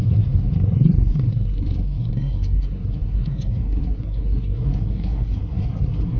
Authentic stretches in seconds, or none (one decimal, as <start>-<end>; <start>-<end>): none